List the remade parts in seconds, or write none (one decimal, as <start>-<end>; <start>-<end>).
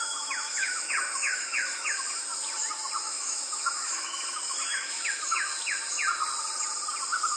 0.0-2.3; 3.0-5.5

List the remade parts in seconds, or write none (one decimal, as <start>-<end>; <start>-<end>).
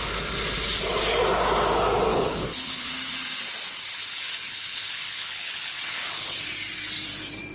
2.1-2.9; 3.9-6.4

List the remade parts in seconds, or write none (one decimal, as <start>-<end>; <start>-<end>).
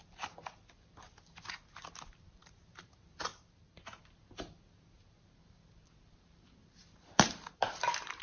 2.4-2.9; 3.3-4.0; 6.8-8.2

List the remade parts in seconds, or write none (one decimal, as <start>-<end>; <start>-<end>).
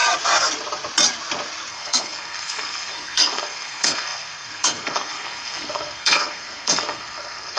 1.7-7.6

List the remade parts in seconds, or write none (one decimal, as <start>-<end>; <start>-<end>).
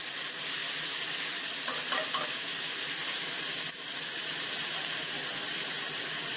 0.6-1.1